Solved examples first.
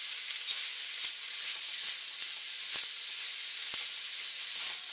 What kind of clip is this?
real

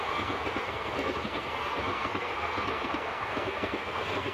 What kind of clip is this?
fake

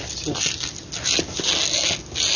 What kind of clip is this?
real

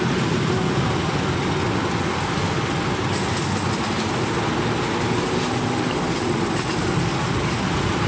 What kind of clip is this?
real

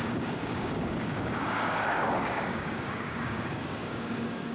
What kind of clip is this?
fake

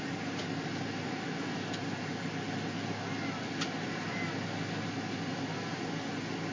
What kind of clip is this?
real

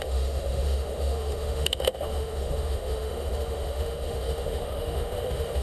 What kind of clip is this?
fake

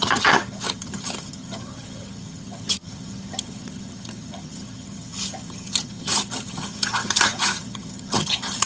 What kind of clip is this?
fake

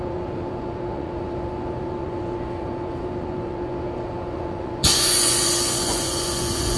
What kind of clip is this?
fake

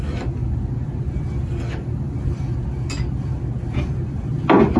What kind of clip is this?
real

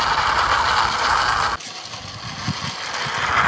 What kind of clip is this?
real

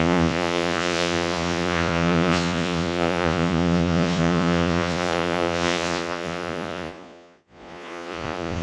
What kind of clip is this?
fake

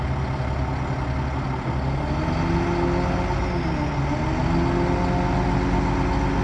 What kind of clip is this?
real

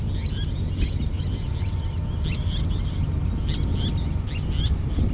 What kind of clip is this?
real